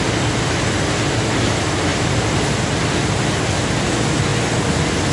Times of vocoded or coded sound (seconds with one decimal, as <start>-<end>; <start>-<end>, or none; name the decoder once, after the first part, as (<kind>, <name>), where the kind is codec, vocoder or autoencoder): 1.9-2.4 (vocoder, BigVGAN v2)